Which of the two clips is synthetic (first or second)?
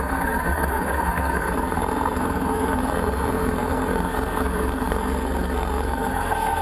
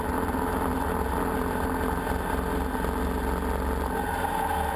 first